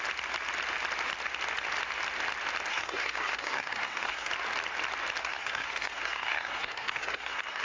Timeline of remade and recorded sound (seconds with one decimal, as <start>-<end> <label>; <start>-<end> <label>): 0.0-2.7 recorded; 2.7-4.3 remade; 4.3-5.2 recorded; 5.2-7.6 remade